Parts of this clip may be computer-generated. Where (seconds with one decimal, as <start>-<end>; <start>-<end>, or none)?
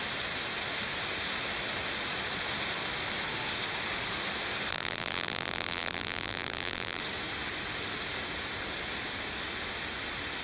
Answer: 4.7-7.0